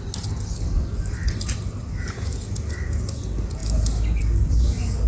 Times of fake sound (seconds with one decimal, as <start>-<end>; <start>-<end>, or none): none